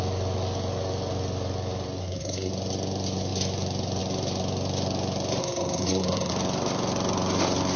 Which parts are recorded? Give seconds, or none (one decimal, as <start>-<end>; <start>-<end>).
0.0-2.0; 2.5-5.4; 6.3-7.8